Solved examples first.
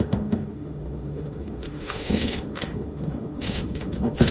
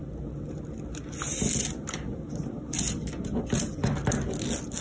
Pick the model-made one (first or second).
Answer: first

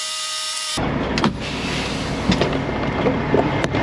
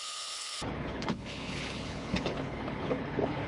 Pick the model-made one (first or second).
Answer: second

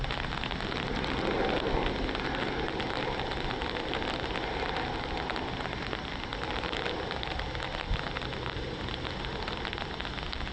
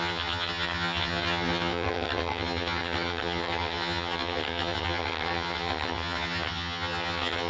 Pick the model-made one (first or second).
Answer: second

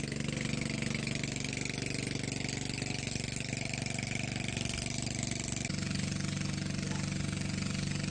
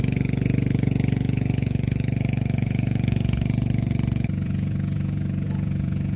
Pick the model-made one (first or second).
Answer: second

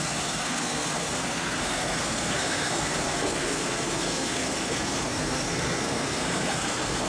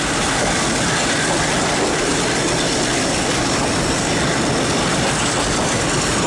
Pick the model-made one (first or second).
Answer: first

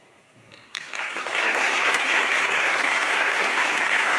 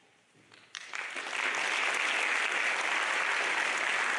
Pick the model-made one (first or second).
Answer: first